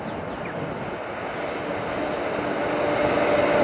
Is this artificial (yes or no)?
no